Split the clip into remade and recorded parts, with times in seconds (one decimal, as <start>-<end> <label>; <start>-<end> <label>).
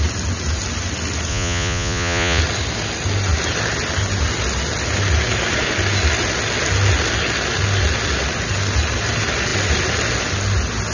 0.0-1.3 recorded; 1.3-2.4 remade; 2.4-10.9 recorded